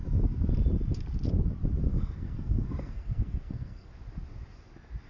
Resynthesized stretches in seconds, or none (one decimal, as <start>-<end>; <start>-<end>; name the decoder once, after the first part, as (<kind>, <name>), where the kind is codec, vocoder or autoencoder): 1.9-3.9 (codec, SNAC)